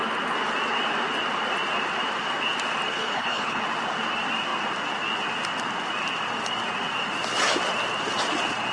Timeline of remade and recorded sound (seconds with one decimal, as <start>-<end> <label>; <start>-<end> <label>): 0.0-2.9 recorded; 2.9-3.6 remade; 3.6-8.7 recorded